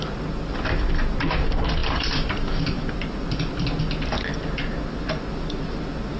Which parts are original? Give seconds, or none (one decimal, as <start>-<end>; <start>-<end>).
0.0-1.8; 3.8-6.2